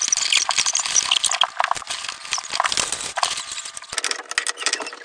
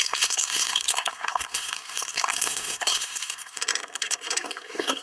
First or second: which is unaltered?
first